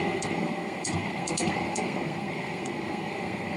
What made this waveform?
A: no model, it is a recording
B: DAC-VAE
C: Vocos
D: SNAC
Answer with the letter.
D